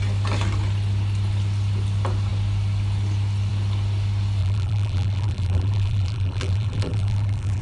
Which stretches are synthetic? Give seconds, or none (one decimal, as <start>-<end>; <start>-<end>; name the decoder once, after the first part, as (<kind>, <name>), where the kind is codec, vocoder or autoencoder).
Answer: 4.4-7.6 (vocoder, BigVGAN v2)